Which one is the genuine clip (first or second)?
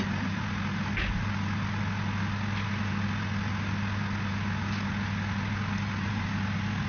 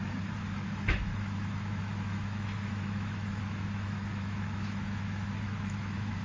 first